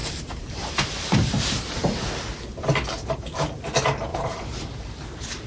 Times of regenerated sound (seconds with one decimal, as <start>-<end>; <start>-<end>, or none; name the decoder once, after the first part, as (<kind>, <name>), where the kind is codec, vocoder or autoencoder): 0.0-1.5 (vocoder, BigVGAN v2); 4.1-5.5